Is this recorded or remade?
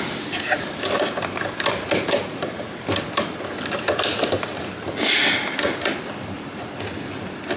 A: recorded